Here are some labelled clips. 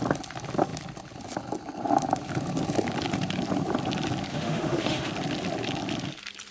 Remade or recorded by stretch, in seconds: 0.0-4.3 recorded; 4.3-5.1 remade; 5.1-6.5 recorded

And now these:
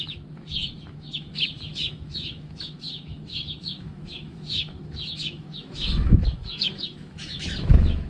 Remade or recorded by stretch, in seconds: 0.0-8.1 remade

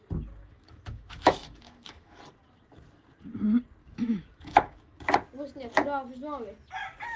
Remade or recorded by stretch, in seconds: 0.0-0.4 recorded; 0.4-2.2 remade; 2.2-3.8 recorded; 3.8-5.0 remade; 5.0-7.2 recorded

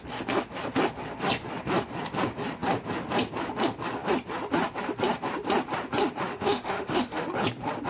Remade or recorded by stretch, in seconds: 0.0-6.3 recorded; 6.3-7.2 remade; 7.2-7.9 recorded